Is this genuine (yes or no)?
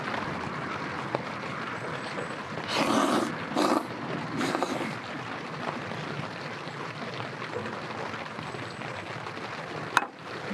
yes